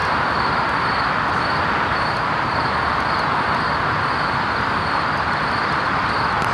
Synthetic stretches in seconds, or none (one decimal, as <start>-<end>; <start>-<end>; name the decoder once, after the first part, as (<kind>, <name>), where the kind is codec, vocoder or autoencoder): none